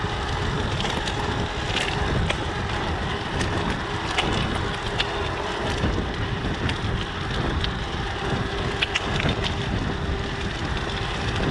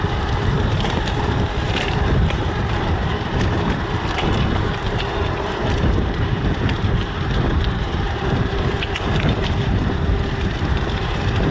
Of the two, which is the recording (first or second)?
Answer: first